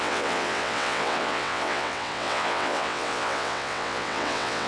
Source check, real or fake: fake